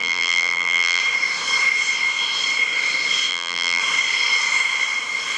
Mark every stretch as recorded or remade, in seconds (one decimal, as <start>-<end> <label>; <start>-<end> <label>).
0.0-1.0 remade; 1.0-3.3 recorded; 3.3-3.8 remade; 3.8-5.4 recorded